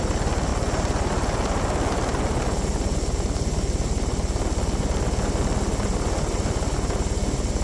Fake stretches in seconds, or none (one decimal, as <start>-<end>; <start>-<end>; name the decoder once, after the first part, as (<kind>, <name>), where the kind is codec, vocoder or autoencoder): none